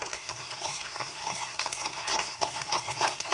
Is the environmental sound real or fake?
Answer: fake